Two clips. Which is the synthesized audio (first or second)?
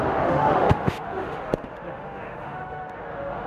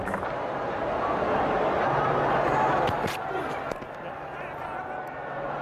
first